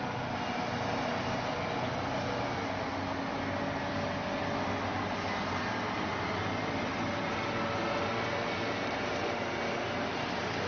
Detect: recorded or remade recorded